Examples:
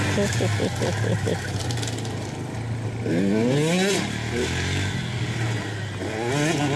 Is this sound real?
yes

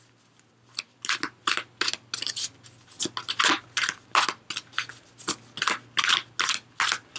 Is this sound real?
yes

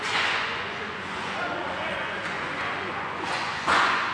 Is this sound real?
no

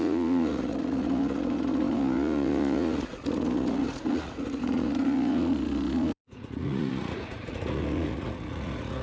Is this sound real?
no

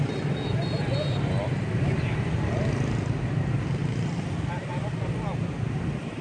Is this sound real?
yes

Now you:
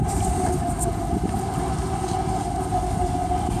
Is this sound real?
yes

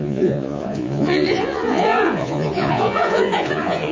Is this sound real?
no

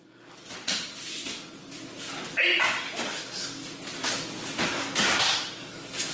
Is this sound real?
yes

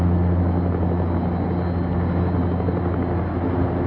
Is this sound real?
yes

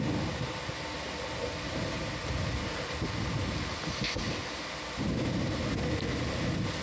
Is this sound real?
yes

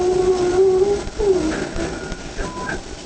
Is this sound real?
yes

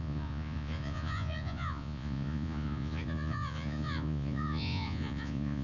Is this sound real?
no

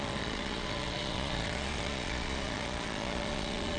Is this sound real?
no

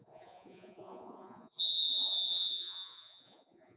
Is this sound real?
no